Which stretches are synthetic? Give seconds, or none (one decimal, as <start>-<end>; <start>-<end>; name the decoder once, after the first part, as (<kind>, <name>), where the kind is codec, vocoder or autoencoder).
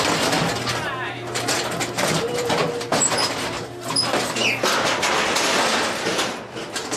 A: none